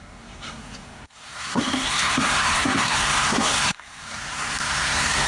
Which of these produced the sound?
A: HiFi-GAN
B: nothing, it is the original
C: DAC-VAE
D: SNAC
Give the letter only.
D